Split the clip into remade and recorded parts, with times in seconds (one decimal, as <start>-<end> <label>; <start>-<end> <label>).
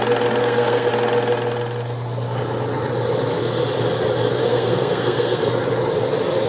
0.0-0.4 recorded; 0.4-0.9 remade; 0.9-4.4 recorded; 4.4-5.5 remade; 5.5-6.5 recorded